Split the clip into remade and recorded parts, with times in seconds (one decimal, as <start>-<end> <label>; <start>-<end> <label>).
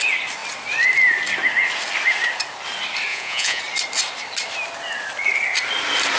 0.0-3.1 recorded; 3.1-3.6 remade; 3.6-6.2 recorded